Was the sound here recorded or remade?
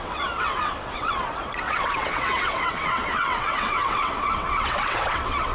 remade